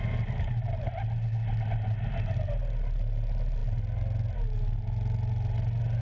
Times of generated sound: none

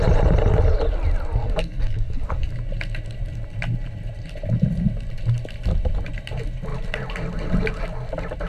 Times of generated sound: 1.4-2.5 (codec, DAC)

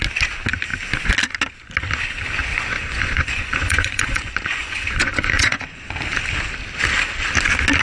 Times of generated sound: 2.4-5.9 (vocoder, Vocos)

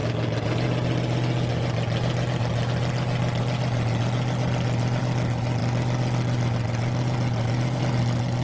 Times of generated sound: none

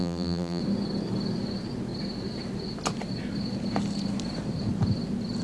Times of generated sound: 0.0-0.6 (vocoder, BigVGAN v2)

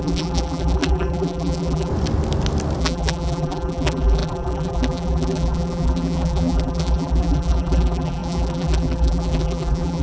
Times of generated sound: 0.0-1.9 (vocoder, BigVGAN v2); 2.8-10.0